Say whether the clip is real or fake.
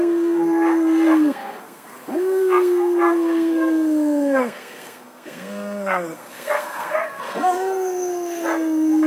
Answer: fake